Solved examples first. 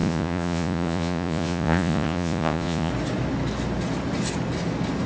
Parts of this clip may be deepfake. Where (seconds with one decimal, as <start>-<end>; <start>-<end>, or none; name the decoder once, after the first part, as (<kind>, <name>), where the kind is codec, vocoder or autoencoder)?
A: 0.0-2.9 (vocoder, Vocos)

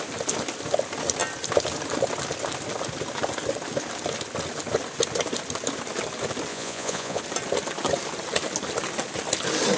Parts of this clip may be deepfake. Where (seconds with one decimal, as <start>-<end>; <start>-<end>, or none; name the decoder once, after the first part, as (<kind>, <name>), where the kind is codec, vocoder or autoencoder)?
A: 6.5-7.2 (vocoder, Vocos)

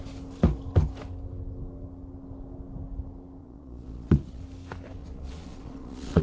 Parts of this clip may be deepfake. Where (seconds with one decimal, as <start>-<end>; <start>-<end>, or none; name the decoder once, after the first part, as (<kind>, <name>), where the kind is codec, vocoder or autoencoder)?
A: 3.4-4.4 (vocoder, Vocos); 5.0-6.2

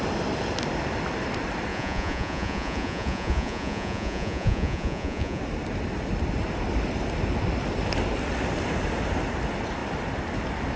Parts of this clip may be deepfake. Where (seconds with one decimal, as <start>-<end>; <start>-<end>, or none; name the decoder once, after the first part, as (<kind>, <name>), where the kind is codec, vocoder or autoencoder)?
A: 1.7-5.4 (vocoder, Vocos)